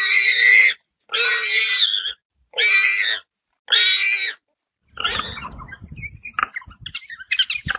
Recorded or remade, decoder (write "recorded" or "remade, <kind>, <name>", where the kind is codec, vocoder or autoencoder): recorded